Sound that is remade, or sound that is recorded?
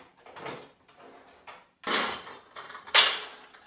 recorded